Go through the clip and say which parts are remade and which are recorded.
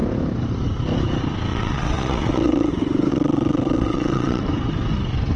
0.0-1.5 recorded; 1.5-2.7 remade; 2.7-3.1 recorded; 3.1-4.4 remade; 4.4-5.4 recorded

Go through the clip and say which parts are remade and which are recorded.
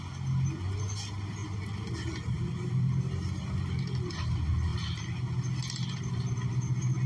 0.0-7.1 recorded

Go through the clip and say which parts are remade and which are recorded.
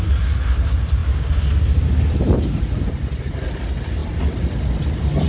0.0-5.3 recorded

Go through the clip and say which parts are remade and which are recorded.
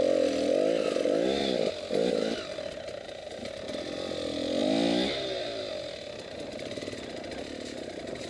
0.0-8.3 recorded